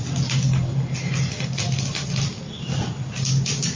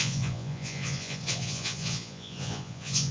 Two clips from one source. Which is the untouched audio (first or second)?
first